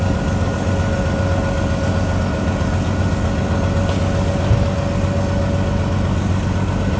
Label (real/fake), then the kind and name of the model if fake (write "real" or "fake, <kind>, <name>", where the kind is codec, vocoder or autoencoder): real